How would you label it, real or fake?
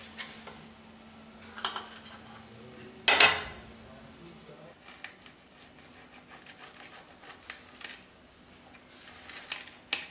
real